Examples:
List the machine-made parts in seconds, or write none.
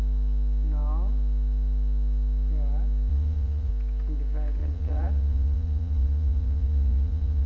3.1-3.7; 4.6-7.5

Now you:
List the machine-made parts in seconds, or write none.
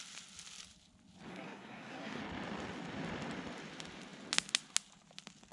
1.3-2.2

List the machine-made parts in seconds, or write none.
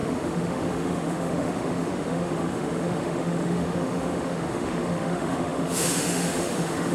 0.0-6.9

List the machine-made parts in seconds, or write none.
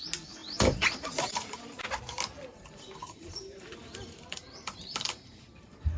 0.4-1.8; 2.5-6.0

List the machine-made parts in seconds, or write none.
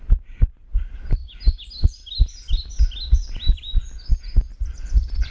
none